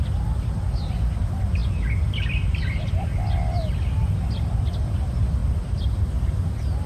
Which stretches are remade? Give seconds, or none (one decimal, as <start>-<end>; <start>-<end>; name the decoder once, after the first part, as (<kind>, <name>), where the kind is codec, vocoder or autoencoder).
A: none